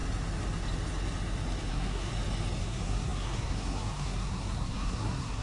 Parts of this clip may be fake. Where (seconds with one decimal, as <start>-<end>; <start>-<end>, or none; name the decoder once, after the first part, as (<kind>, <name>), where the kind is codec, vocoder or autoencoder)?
1.7-2.1 (codec, SNAC); 2.6-5.4